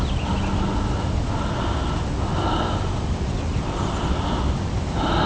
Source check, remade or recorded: recorded